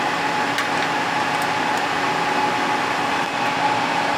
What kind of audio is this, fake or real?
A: real